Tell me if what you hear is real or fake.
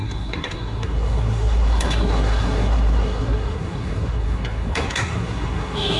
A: fake